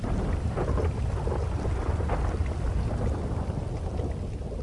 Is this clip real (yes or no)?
yes